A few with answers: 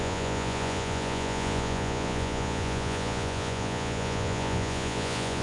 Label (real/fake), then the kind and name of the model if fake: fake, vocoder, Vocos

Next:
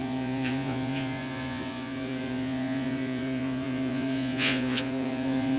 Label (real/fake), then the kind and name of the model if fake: fake, vocoder, Vocos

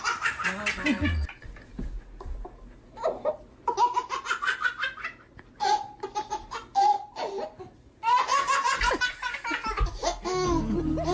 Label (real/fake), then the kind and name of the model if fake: real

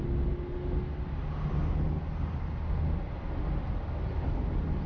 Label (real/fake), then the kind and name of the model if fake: real